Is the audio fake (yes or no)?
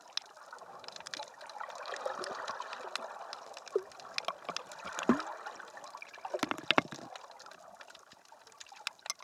no